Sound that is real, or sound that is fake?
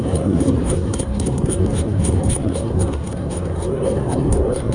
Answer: fake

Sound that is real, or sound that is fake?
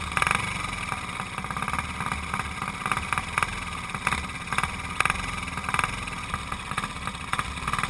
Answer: real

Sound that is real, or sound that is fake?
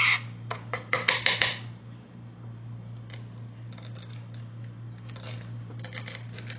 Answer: real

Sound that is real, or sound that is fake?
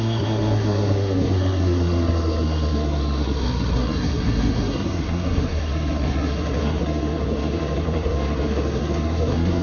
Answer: fake